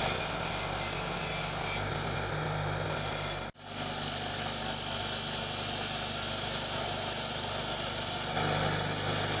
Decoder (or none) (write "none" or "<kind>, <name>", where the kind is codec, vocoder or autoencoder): none